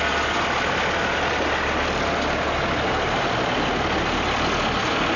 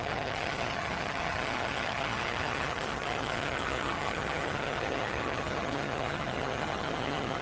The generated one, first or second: second